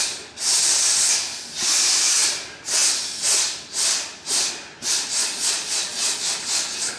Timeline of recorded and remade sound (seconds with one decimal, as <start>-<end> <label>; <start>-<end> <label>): 0.0-5.2 recorded; 5.2-6.2 remade; 6.2-7.0 recorded